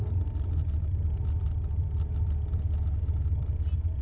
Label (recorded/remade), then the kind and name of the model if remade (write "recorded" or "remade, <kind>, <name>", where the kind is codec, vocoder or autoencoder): recorded